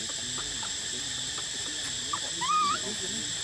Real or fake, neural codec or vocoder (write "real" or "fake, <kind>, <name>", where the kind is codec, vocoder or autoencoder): fake, vocoder, BigVGAN v2